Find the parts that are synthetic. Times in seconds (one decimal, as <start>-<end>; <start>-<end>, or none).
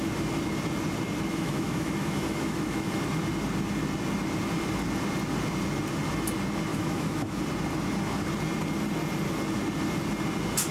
1.3-3.0; 6.7-7.4